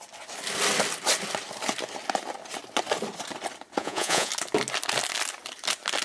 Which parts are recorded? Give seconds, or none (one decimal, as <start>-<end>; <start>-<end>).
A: 0.0-3.8; 4.3-6.0